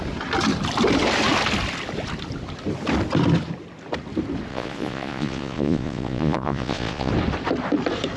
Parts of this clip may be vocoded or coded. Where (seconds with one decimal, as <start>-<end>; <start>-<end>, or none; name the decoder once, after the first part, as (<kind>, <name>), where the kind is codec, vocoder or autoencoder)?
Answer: 4.5-7.1 (vocoder, Vocos)